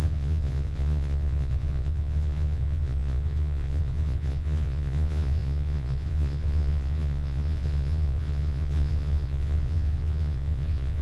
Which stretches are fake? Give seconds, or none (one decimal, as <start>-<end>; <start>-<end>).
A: 0.0-11.0